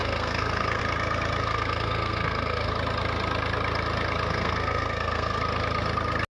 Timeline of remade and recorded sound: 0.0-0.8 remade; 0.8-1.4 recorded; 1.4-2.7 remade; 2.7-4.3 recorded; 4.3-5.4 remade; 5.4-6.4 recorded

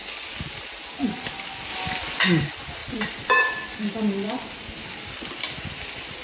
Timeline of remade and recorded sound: 0.0-1.0 remade; 1.0-2.8 recorded; 2.8-6.2 remade

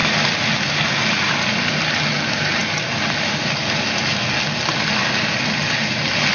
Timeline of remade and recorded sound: 0.0-6.3 recorded

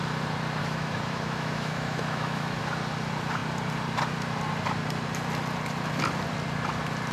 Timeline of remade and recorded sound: 0.0-0.6 recorded; 0.6-2.6 remade; 2.6-7.1 recorded

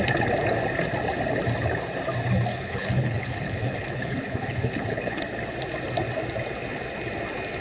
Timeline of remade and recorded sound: 0.0-2.5 recorded; 2.5-5.2 remade; 5.2-7.6 recorded

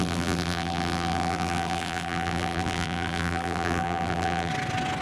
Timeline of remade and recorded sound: 0.0-4.5 remade; 4.5-5.0 recorded

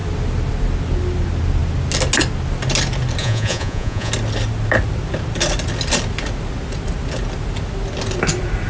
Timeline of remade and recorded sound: 0.0-3.2 recorded; 3.2-4.1 remade; 4.1-8.7 recorded